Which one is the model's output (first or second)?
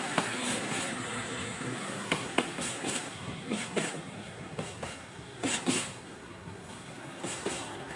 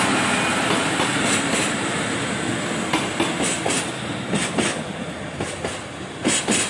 first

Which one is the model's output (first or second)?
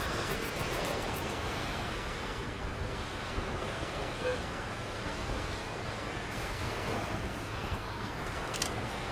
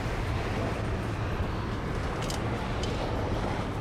first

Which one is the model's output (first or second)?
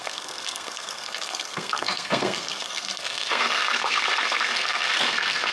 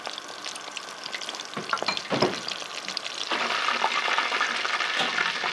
first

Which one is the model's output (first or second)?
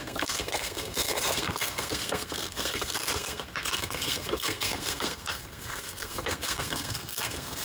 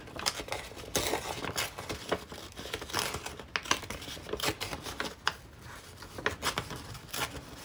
first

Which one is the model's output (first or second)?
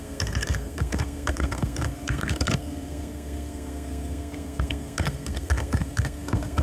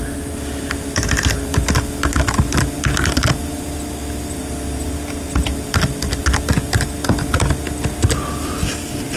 first